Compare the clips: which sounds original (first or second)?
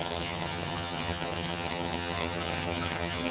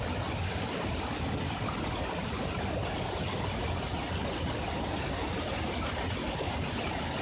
second